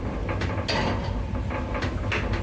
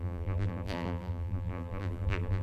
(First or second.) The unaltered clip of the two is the first